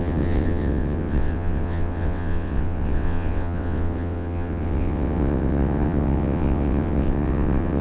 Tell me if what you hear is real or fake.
fake